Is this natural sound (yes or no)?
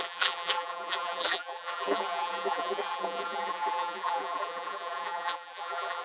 no